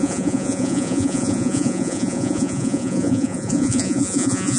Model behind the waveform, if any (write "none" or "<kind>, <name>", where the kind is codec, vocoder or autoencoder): vocoder, Vocos